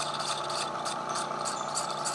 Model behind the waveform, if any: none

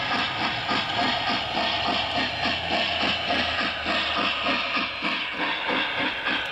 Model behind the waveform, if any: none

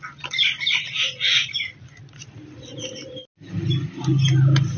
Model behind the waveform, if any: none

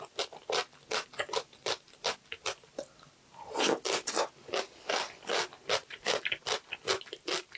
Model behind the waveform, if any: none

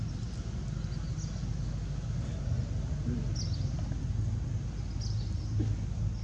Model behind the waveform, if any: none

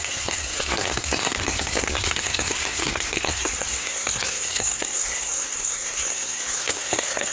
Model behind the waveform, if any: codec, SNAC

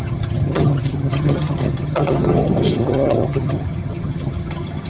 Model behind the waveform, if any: vocoder, HiFi-GAN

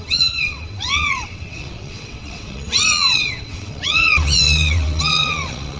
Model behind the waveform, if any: vocoder, WaveNeXt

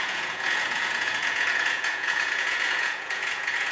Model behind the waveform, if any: vocoder, Vocos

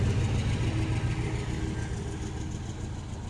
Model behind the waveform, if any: none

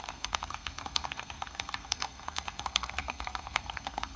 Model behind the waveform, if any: codec, SNAC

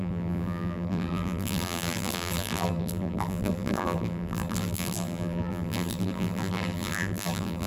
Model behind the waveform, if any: vocoder, BigVGAN v2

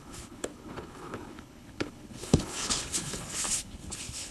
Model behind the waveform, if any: codec, HILCodec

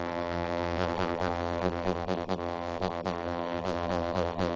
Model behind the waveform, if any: vocoder, BigVGAN v2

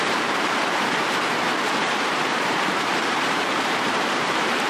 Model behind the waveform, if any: vocoder, BigVGAN v2